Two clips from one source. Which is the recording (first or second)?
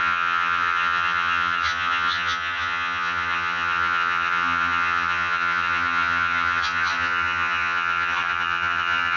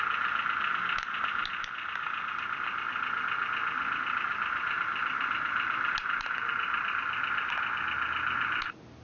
second